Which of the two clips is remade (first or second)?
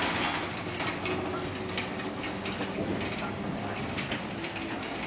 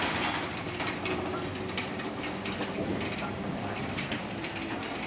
second